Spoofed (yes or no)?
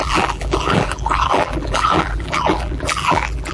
yes